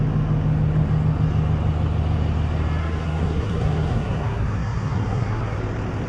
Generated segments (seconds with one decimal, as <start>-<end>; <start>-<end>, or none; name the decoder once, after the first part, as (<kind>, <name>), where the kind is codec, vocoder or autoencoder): 2.8-5.6 (codec, SNAC)